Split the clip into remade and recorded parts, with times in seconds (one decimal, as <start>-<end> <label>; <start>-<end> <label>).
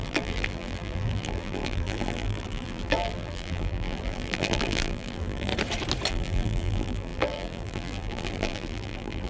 0.0-5.5 remade; 5.5-6.1 recorded; 6.1-9.3 remade